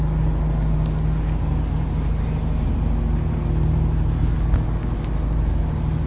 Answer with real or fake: real